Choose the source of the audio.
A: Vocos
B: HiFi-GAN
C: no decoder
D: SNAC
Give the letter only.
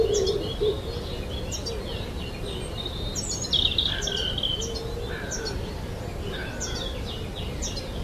C